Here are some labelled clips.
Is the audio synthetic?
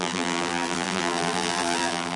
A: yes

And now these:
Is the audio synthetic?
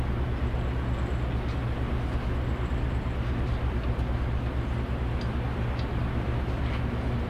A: no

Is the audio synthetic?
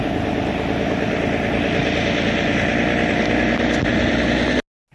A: no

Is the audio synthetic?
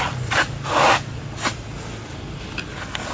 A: no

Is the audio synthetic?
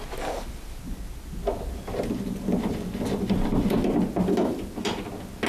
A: no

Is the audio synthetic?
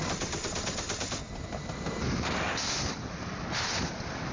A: no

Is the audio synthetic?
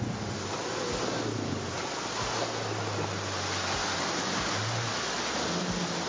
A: no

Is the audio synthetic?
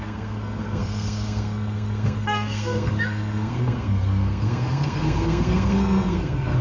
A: yes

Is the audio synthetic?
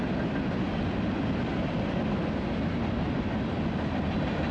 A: no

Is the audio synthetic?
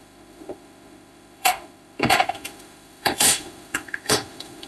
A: yes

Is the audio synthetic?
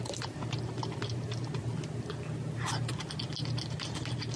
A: no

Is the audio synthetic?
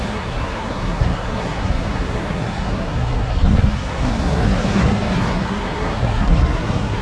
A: yes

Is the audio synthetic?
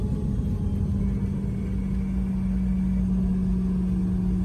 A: no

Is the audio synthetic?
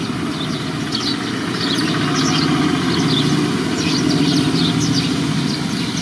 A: no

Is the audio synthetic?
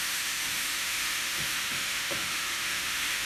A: yes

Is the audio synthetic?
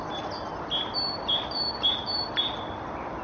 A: no